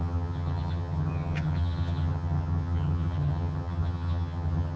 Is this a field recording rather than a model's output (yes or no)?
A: no